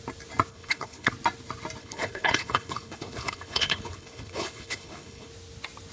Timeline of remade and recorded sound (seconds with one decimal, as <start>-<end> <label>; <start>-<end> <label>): 0.0-0.5 recorded; 0.5-1.1 remade; 1.1-1.8 recorded; 1.8-5.3 remade; 5.3-5.9 recorded